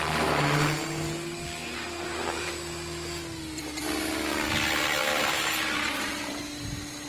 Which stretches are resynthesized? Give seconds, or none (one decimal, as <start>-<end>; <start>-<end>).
1.6-2.5; 5.0-7.1